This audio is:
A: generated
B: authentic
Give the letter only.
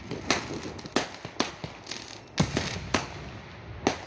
B